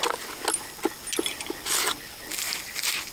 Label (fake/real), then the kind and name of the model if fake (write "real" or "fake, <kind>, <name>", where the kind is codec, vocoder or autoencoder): real